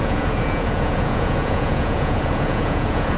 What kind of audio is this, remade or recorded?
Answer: remade